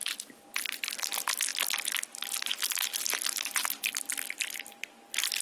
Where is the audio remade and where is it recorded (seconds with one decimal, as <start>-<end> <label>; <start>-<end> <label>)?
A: 0.0-0.6 remade; 0.6-5.4 recorded